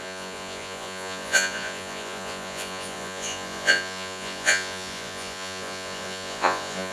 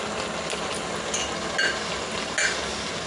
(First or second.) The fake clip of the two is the first